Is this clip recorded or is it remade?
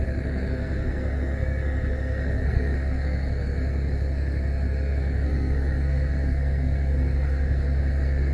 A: remade